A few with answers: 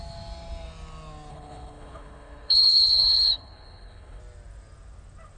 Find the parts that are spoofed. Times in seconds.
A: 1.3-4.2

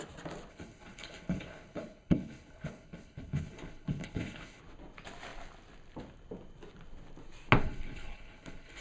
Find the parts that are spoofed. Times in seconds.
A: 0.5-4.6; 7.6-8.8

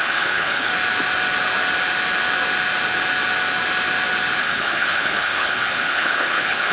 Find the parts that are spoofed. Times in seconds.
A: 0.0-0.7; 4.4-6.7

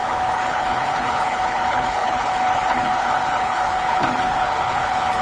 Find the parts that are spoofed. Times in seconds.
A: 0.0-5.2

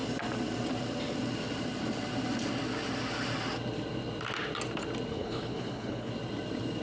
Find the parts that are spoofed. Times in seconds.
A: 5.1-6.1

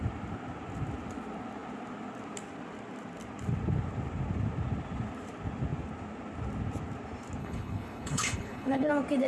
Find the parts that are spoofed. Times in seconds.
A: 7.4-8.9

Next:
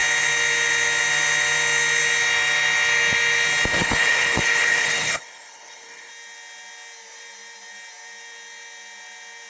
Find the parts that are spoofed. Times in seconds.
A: 3.8-6.1

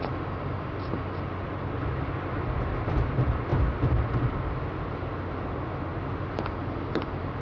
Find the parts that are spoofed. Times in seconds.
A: none